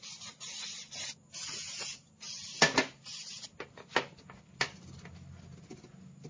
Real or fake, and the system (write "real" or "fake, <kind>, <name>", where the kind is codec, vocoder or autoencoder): real